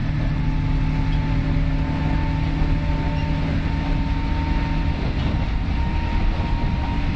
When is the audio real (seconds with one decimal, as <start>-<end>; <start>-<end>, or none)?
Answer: 0.0-7.2